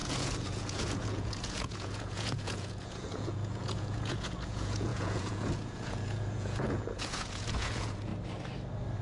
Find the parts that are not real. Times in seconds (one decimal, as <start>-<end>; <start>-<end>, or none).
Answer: 0.0-8.1